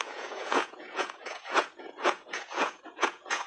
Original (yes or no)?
no